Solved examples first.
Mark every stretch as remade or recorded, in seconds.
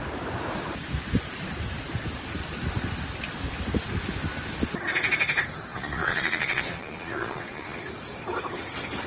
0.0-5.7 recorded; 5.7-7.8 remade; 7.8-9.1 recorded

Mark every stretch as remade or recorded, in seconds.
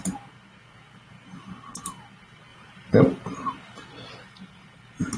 0.0-2.5 recorded; 2.5-3.0 remade; 3.0-5.2 recorded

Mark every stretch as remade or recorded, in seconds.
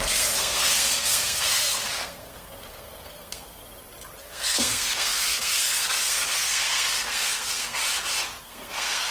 0.0-3.6 remade; 3.6-4.2 recorded; 4.2-7.8 remade; 7.8-8.4 recorded; 8.4-9.1 remade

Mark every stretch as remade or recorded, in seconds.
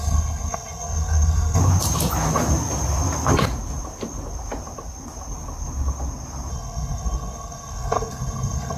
0.0-1.6 remade; 1.6-6.5 recorded; 6.5-8.8 remade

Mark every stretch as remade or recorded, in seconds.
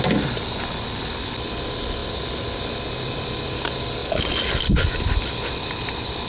0.0-6.3 recorded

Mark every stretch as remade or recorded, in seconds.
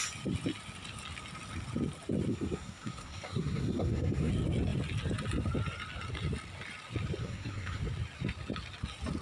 0.0-2.3 recorded; 2.3-4.3 remade; 4.3-7.2 recorded; 7.2-7.8 remade; 7.8-9.2 recorded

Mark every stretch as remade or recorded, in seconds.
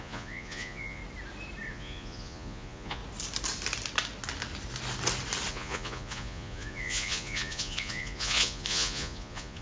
0.0-1.0 remade; 1.0-1.7 recorded; 1.7-3.0 remade; 3.0-5.5 recorded; 5.5-9.6 remade